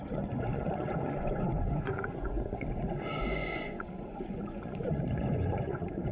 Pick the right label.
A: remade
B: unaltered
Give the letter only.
A